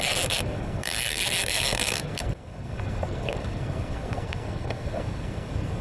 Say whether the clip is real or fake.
fake